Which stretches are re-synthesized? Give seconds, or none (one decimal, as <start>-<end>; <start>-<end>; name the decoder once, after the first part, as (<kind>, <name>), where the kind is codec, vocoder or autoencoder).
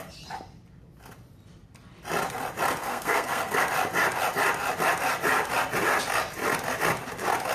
2.8-3.6 (codec, SNAC)